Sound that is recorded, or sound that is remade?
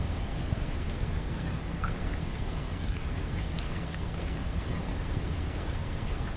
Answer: remade